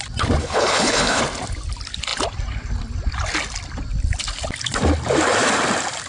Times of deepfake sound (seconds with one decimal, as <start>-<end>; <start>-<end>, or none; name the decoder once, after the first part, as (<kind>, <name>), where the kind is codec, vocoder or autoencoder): 0.4-1.2 (codec, HILCodec)